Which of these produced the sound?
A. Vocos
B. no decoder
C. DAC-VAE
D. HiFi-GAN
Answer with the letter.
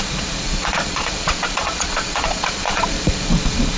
A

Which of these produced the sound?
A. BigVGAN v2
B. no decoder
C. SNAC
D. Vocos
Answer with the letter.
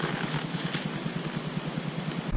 B